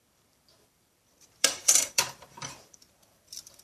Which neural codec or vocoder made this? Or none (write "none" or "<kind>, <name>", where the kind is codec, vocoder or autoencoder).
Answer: vocoder, BigVGAN v2